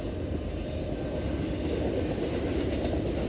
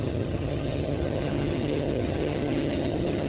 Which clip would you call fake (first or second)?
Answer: second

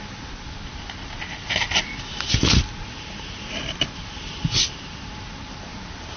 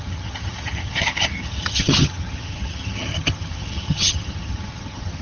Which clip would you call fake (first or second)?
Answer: second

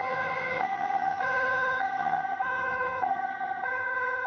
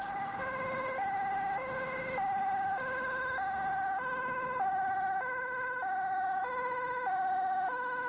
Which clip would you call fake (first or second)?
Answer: first